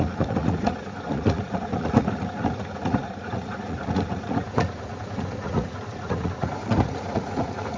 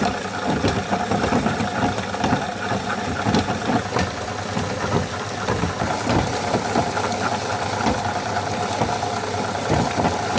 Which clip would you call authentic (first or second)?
second